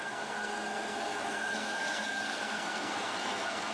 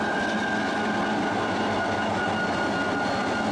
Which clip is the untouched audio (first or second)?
second